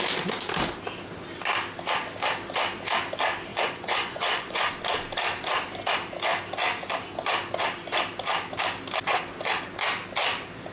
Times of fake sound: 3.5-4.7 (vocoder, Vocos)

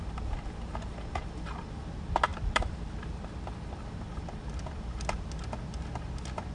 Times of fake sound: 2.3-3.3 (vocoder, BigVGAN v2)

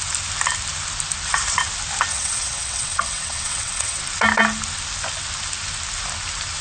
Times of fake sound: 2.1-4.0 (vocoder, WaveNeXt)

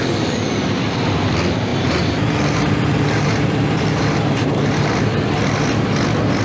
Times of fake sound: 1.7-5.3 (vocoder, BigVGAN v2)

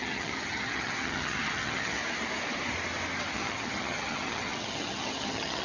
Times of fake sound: 0.0-2.0 (vocoder, HiFi-GAN); 3.3-5.6

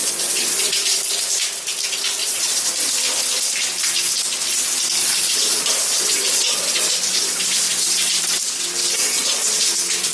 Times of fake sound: 0.0-1.0 (vocoder, Vocos); 2.2-2.7; 5.0-8.1; 9.0-10.1

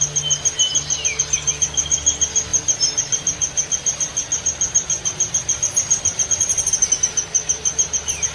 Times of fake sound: 2.5-6.7 (vocoder, BigVGAN v2)